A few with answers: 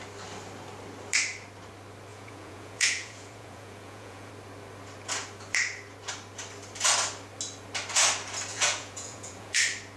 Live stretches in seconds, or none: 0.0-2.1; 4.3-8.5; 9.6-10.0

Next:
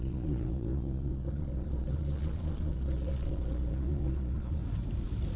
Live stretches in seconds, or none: 4.6-5.4